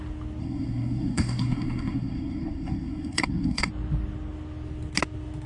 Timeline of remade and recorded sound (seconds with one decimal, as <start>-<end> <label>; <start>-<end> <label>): 0.0-0.4 recorded; 0.4-3.7 remade; 3.7-5.5 recorded

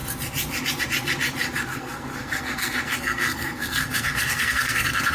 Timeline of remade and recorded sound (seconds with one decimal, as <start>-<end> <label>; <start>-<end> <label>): 0.0-1.7 recorded; 1.7-5.1 remade

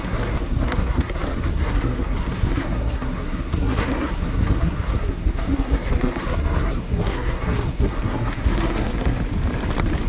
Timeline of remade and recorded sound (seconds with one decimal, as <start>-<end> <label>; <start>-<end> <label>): 0.0-9.2 remade; 9.2-10.1 recorded

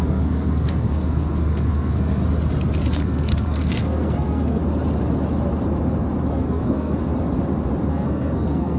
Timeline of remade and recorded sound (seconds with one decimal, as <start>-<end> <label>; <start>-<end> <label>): 0.0-2.2 remade; 2.2-2.9 recorded; 2.9-4.6 remade; 4.6-6.3 recorded; 6.3-7.1 remade; 7.1-7.9 recorded; 7.9-8.8 remade